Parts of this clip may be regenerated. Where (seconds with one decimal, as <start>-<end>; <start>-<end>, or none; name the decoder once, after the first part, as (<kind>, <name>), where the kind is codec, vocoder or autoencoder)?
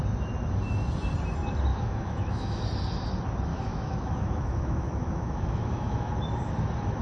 1.7-2.6 (autoencoder, DAC-VAE); 3.5-6.1